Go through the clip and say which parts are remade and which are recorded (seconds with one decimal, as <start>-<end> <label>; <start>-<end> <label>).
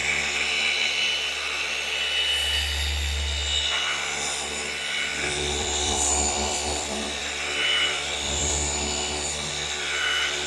0.0-5.1 recorded; 5.1-9.5 remade; 9.5-10.5 recorded